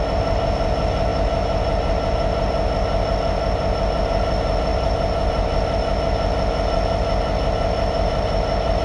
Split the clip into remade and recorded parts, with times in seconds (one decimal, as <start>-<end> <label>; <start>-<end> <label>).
0.0-8.8 recorded